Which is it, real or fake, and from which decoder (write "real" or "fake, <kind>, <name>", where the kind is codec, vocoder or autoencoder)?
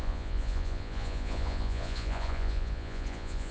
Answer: fake, vocoder, Vocos